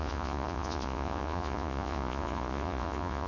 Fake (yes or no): yes